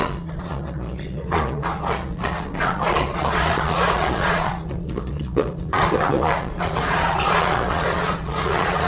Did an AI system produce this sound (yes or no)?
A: yes